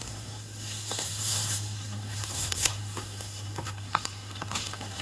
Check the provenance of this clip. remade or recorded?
remade